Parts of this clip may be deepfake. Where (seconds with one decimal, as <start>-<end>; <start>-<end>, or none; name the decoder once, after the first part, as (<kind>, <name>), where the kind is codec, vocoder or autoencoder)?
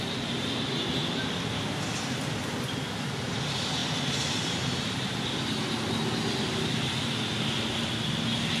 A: none